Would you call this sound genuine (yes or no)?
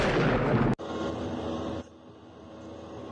yes